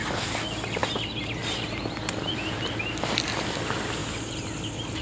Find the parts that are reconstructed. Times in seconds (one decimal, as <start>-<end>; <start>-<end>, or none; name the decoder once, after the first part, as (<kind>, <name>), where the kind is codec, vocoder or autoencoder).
none